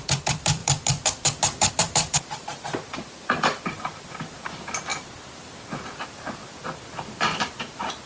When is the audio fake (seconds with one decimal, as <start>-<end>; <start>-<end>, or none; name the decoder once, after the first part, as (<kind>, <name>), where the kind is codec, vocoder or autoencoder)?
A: 0.0-2.5 (vocoder, BigVGAN v2); 3.6-8.1